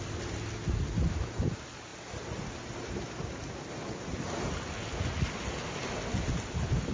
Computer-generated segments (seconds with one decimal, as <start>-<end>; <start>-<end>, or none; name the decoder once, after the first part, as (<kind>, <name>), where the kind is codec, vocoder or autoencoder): none